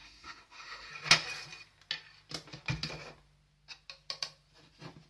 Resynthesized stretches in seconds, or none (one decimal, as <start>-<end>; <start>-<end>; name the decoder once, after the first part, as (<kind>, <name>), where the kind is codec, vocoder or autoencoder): 0.0-0.9 (autoencoder, DAC-VAE)